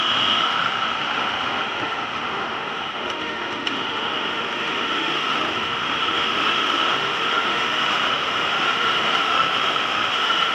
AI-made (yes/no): yes